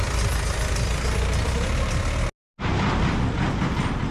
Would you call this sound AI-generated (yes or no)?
no